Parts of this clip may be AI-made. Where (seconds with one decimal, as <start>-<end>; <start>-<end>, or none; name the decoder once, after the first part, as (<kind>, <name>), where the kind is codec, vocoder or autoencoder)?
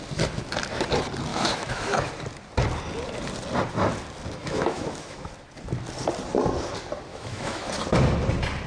1.3-2.1 (autoencoder, DAC-VAE); 4.4-5.3; 7.1-7.7